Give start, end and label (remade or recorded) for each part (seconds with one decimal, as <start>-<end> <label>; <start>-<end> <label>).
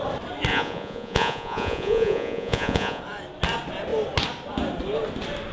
0.0-0.5 recorded; 0.5-3.0 remade; 3.0-5.5 recorded